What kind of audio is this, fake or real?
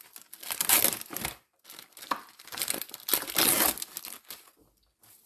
real